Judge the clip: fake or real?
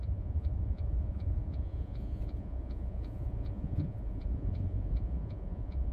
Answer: fake